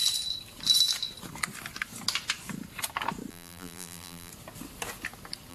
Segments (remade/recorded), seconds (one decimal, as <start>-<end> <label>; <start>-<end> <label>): 0.0-3.3 recorded; 3.3-4.3 remade; 4.3-5.5 recorded

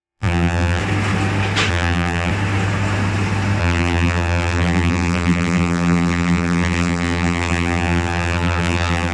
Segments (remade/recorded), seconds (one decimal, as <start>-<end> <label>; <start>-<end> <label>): 0.0-0.8 remade; 0.8-1.7 recorded; 1.7-2.3 remade; 2.3-3.6 recorded; 3.6-9.1 remade

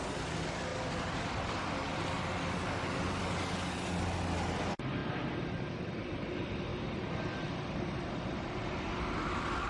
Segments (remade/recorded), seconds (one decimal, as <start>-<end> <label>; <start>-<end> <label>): 0.0-9.7 recorded

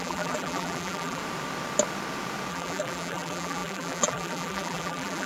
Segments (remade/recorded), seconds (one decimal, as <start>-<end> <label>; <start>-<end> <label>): 0.0-1.2 remade; 1.2-2.5 recorded; 2.5-5.3 remade